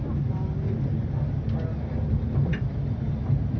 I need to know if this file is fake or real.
real